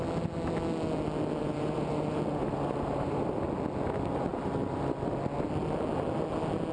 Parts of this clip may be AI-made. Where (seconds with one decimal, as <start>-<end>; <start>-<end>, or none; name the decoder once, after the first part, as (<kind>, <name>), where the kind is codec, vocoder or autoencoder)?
1.4-3.4 (vocoder, BigVGAN v2)